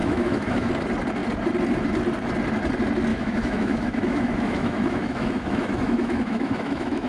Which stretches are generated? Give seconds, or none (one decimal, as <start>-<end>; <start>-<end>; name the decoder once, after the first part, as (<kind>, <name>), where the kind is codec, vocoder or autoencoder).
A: 0.0-0.7 (autoencoder, DAC-VAE); 3.1-7.1

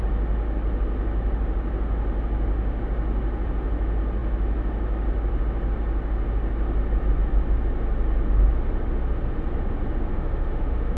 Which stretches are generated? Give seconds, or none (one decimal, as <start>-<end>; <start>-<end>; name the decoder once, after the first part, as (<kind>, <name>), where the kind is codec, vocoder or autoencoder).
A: 10.1-11.0 (autoencoder, DAC-VAE)

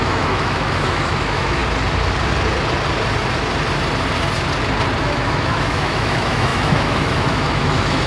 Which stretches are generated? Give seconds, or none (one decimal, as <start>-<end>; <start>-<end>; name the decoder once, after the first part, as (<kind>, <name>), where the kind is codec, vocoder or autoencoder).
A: 0.0-1.6 (autoencoder, DAC-VAE); 5.0-8.1

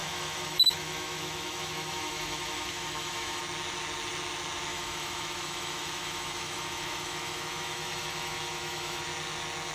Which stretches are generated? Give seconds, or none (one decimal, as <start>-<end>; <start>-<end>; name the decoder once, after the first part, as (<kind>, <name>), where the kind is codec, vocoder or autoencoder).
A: 0.0-3.4 (autoencoder, DAC-VAE); 4.7-9.0

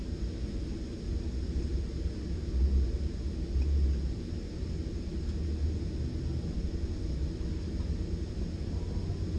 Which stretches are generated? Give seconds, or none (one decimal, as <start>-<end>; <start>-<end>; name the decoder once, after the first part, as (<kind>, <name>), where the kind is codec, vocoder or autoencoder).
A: 7.0-7.5 (autoencoder, DAC-VAE)